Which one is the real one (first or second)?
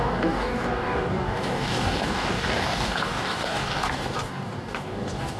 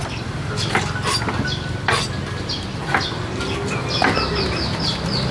second